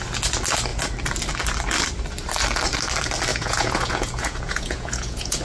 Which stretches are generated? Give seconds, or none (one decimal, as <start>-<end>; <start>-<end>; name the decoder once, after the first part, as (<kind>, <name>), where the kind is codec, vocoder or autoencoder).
3.3-5.4 (vocoder, Vocos)